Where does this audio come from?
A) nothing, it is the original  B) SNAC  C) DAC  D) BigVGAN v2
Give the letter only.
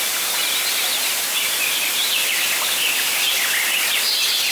A